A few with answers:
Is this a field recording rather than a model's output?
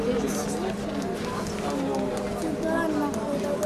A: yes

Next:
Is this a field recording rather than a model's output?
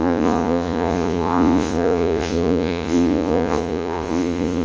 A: no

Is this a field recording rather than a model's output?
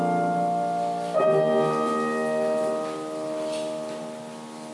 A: yes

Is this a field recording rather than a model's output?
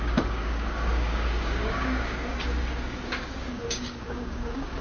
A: no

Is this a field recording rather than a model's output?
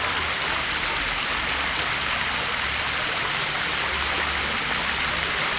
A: yes